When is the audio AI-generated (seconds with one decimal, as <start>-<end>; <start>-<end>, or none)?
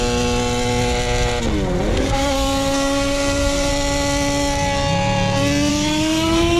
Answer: 1.9-3.7; 5.7-6.6